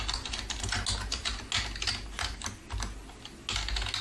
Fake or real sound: real